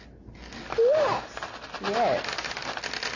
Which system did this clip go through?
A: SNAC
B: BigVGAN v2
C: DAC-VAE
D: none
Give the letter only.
D